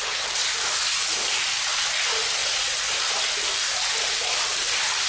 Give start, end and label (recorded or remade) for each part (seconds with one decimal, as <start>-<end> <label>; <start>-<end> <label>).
0.0-5.1 recorded